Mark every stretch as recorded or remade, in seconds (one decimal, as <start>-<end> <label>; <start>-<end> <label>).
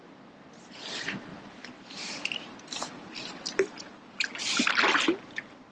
0.0-1.3 recorded; 1.3-4.7 remade; 4.7-5.7 recorded